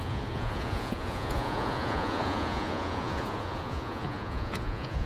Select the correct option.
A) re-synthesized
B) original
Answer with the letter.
A